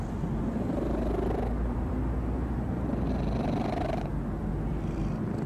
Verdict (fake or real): real